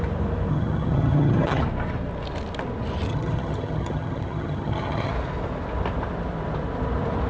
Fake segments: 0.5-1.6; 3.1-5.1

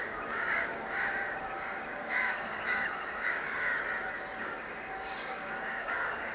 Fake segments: 0.0-3.7; 4.4-6.3

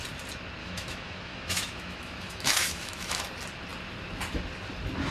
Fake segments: 0.6-3.2

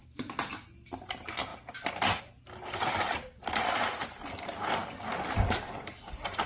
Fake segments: none

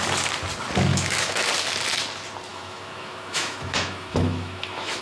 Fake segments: 0.9-1.5; 2.5-5.0

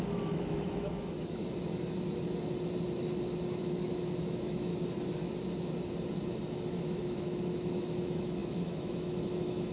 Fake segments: 0.0-1.4; 3.6-4.7; 6.7-9.7